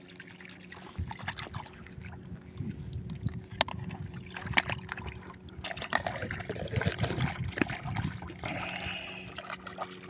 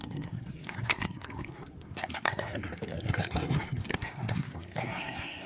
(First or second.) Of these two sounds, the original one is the first